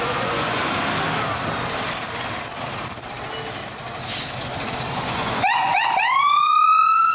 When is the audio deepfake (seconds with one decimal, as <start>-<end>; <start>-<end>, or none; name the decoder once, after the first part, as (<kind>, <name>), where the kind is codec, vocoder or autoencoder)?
0.0-0.6 (vocoder, Vocos); 4.9-7.1